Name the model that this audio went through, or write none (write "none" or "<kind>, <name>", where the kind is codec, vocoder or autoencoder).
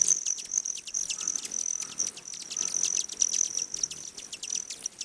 none